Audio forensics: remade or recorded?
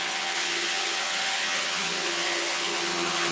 remade